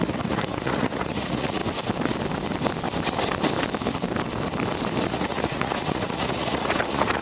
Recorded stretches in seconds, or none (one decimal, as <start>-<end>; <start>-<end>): 1.6-5.1